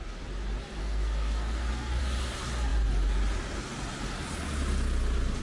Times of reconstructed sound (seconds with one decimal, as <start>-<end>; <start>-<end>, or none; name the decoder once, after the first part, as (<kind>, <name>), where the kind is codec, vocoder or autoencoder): 0.8-2.0 (codec, SNAC)